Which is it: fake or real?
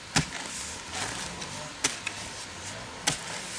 real